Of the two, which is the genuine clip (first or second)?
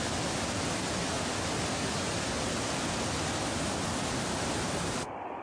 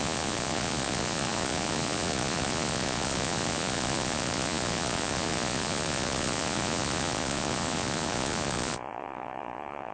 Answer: first